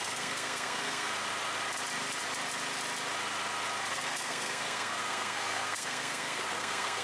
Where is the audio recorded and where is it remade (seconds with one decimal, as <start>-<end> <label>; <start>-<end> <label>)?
0.0-1.1 remade; 1.1-3.9 recorded; 3.9-7.0 remade